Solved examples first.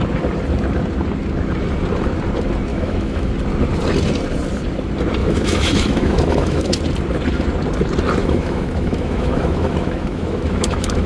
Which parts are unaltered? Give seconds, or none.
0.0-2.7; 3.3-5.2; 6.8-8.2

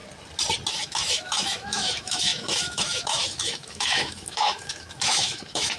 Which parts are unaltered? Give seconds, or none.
0.0-0.7

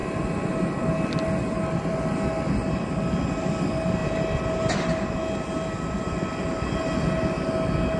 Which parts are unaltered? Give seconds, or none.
0.0-8.0

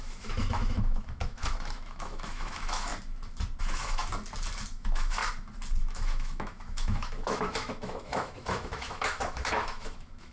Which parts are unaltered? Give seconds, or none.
2.9-3.6; 4.0-4.7; 5.2-5.8